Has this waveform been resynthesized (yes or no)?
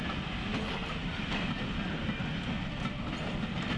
no